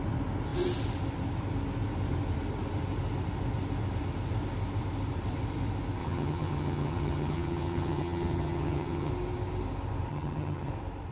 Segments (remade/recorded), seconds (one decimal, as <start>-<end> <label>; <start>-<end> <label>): 0.0-6.0 recorded; 6.0-9.1 remade; 9.1-10.1 recorded; 10.1-10.7 remade; 10.7-11.1 recorded

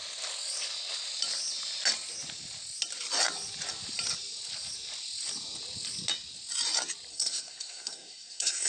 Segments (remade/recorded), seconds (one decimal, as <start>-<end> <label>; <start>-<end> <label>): 0.0-7.1 recorded; 7.1-8.7 remade

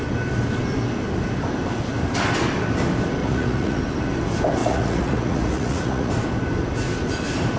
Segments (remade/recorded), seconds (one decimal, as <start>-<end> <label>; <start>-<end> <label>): 0.0-3.2 recorded; 3.2-3.8 remade; 3.8-4.6 recorded; 4.6-6.1 remade; 6.1-7.6 recorded

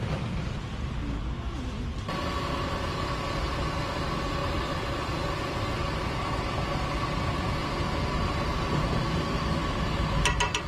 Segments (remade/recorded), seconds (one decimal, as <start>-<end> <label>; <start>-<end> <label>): 0.0-10.7 recorded

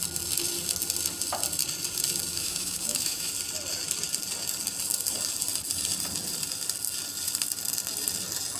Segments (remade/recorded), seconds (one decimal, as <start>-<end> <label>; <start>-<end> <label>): 0.0-2.3 recorded; 2.3-3.3 remade; 3.3-8.6 recorded

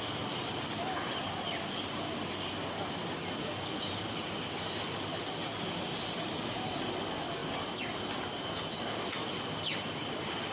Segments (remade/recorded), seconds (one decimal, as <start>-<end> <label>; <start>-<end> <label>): 0.0-10.5 recorded

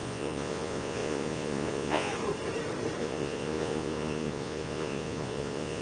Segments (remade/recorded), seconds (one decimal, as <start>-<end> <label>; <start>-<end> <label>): 0.0-2.1 remade; 2.1-3.0 recorded; 3.0-5.8 remade